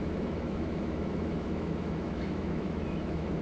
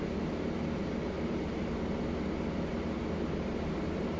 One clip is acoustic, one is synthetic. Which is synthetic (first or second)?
first